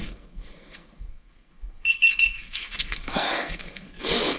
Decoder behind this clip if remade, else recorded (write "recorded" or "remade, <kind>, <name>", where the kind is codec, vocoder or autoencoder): remade, codec, SNAC